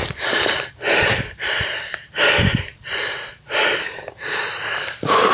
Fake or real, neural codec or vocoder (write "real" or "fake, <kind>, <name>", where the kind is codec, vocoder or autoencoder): fake, vocoder, BigVGAN v2